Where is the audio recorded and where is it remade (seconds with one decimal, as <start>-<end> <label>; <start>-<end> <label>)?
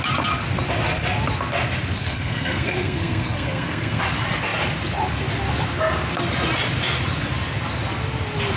0.0-2.0 recorded; 2.0-4.0 remade; 4.0-8.6 recorded